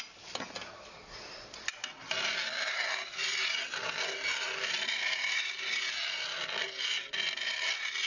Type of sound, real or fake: real